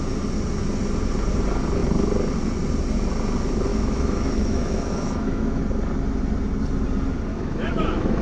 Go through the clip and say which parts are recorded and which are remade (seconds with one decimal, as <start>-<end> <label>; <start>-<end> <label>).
0.0-3.7 recorded; 3.7-5.6 remade; 5.6-7.3 recorded; 7.3-8.2 remade

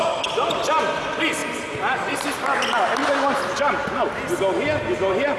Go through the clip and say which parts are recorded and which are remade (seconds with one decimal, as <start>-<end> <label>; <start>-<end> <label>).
0.0-5.4 recorded

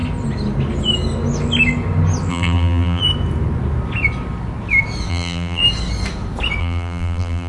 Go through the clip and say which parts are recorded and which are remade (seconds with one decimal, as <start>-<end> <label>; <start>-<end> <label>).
0.0-2.3 recorded; 2.3-3.0 remade; 3.0-5.1 recorded; 5.1-5.6 remade; 5.6-6.6 recorded; 6.6-7.5 remade